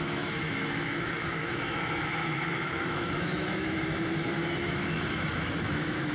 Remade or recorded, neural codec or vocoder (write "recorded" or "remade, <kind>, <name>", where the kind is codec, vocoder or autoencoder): remade, autoencoder, DAC-VAE